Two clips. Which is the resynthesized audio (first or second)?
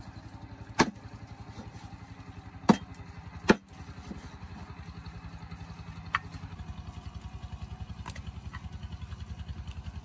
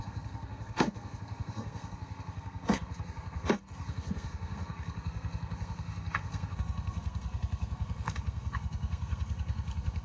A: second